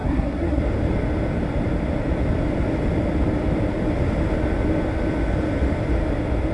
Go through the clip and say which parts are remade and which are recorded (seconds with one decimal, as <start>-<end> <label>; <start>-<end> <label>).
0.0-0.6 remade; 0.6-6.5 recorded